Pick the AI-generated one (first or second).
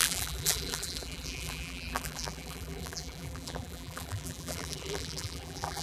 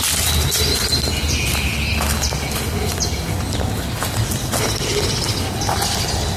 first